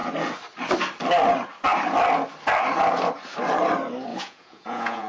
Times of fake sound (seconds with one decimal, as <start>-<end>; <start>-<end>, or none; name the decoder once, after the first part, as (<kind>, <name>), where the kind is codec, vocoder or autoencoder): 4.1-5.1 (vocoder, Vocos)